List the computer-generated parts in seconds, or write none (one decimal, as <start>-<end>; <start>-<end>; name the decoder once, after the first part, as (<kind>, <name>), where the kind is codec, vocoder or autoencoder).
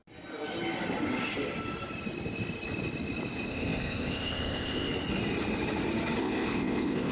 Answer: 3.5-4.9 (codec, ZipCodec); 6.2-7.1